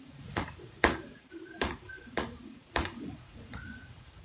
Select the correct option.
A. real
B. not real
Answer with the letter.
B